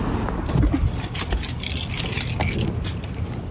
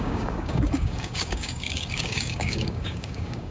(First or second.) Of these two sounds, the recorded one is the first